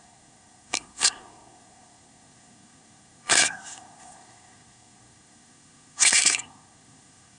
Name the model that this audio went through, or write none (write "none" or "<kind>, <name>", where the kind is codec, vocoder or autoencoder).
codec, SNAC